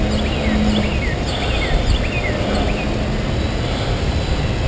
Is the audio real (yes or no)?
yes